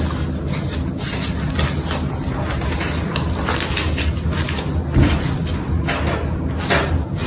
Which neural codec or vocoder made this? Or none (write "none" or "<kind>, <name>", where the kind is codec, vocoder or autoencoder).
none